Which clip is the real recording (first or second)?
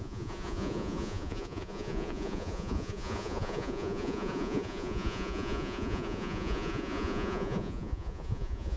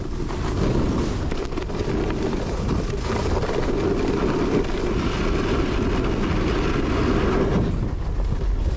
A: second